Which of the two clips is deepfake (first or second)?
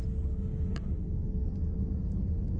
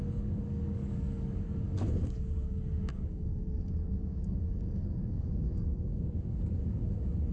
second